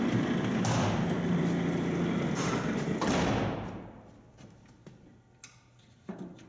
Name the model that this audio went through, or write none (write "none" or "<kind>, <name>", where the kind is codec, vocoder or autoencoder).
none